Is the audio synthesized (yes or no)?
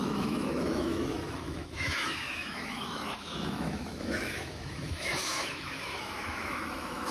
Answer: yes